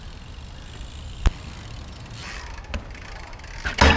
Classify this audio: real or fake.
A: real